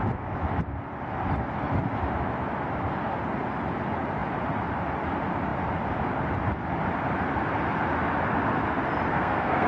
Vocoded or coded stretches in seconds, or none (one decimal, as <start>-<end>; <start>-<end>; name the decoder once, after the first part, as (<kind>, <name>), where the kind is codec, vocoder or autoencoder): 9.1-9.7 (codec, SNAC)